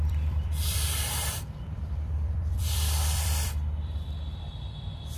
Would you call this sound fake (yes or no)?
yes